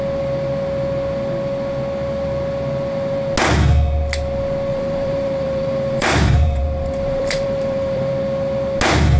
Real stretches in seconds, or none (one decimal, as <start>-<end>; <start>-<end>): 0.0-4.7; 8.1-9.2